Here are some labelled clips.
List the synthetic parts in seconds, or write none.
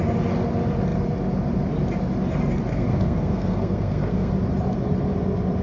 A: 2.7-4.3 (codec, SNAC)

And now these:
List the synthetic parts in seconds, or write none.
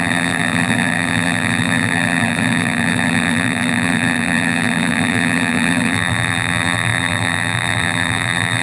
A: 0.0-8.6 (vocoder, BigVGAN v2)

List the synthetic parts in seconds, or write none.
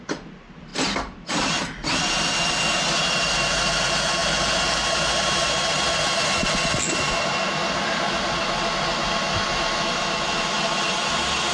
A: none